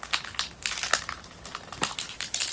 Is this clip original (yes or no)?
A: yes